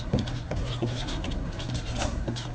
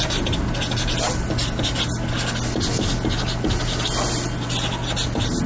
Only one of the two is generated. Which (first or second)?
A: first